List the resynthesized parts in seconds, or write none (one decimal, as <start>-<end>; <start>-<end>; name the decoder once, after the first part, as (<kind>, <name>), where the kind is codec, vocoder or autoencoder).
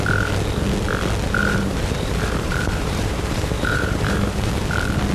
1.4-4.5 (vocoder, BigVGAN v2)